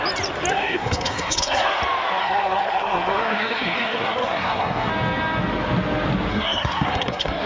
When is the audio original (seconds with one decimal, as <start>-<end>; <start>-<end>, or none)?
0.0-0.5; 1.8-2.2; 4.9-6.3